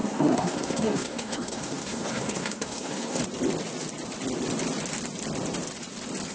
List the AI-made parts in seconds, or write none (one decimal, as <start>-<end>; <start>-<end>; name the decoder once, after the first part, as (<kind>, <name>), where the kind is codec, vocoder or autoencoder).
0.0-3.2 (codec, SNAC)